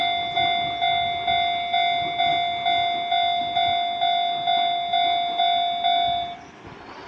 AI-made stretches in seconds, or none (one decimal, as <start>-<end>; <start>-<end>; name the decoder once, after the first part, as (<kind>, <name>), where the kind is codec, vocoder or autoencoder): none